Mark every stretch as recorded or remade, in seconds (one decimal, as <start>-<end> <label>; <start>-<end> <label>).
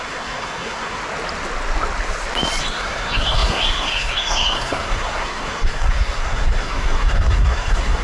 0.0-1.0 remade; 1.0-2.6 recorded; 2.6-8.0 remade